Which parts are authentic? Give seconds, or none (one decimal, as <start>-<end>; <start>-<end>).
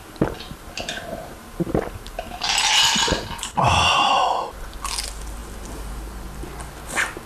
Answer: 0.0-7.3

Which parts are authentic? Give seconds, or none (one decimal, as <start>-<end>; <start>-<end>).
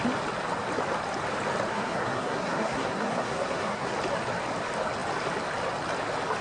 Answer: 0.0-1.7; 3.9-6.4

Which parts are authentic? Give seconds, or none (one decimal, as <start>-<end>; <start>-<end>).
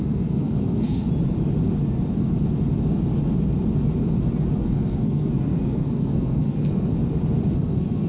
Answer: 1.1-4.6; 6.9-7.5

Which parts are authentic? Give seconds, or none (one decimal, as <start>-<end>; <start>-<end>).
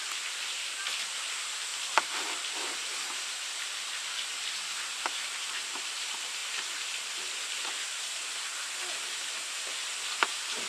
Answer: 0.0-1.7; 6.0-6.4; 7.2-10.7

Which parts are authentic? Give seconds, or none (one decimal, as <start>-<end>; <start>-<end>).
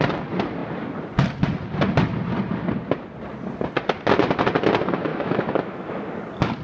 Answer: 0.0-5.1; 6.1-6.6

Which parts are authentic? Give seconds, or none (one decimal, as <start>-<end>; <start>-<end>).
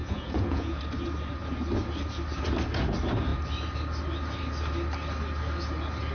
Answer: 0.8-6.1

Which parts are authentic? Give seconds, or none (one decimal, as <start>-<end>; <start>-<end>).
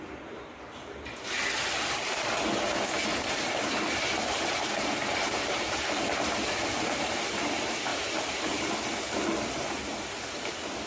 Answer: 0.0-3.1; 7.1-7.9; 8.7-10.9